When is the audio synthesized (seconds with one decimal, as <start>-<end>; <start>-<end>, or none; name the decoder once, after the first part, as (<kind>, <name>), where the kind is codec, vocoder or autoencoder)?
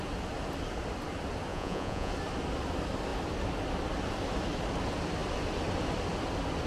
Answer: 1.5-2.1 (vocoder, Vocos)